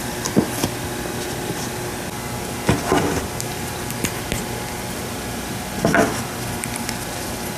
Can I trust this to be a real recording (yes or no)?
yes